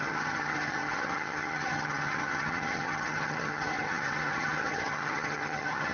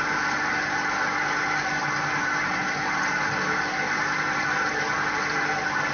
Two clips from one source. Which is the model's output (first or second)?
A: first